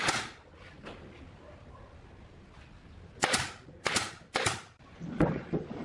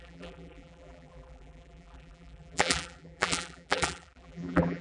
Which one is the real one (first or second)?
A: first